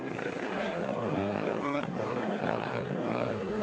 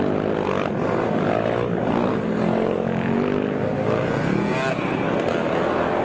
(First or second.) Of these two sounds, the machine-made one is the first